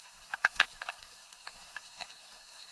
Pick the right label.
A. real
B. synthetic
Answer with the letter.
B